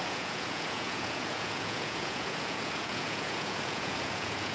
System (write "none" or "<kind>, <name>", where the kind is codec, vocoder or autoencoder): vocoder, Vocos